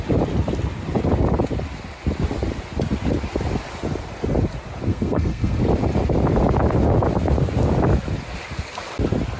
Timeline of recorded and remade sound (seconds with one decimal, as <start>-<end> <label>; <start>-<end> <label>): 0.0-4.9 recorded; 4.9-5.6 remade; 5.6-9.4 recorded